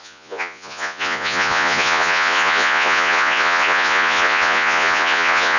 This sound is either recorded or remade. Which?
remade